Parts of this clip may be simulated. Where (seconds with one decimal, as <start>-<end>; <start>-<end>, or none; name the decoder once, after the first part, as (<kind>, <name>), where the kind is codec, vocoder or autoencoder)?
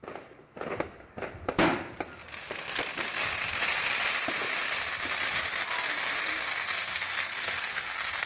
6.2-8.3 (codec, SNAC)